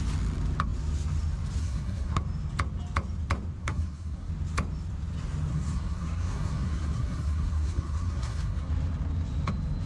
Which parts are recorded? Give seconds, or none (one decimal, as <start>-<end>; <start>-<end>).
0.0-1.6; 2.2-3.6; 4.3-5.5; 8.7-9.9